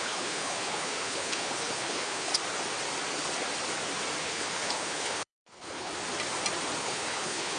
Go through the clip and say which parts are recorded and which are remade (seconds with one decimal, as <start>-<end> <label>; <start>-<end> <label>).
0.0-2.3 remade; 2.3-4.2 recorded; 4.2-5.9 remade; 5.9-6.8 recorded; 6.8-7.6 remade